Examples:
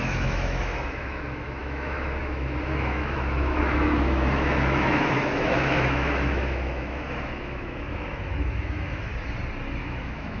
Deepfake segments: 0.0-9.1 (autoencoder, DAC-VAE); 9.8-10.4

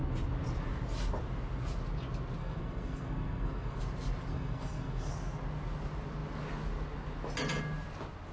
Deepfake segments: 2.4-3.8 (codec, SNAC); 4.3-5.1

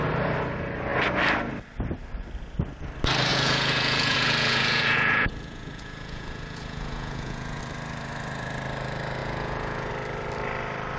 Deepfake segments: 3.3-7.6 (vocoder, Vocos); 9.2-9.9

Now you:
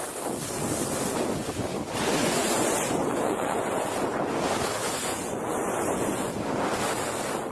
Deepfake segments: 2.2-3.6 (vocoder, Vocos); 4.8-6.3

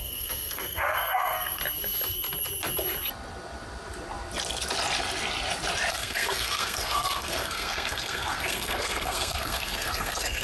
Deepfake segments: 0.0-1.6 (codec, SNAC); 5.9-10.4

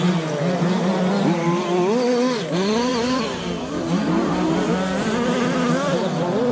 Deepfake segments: none